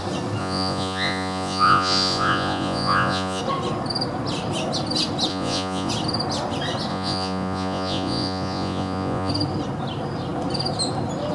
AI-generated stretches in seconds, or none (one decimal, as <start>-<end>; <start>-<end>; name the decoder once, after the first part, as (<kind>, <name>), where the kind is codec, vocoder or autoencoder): 0.4-3.4 (vocoder, Vocos); 5.3-5.9; 6.9-9.3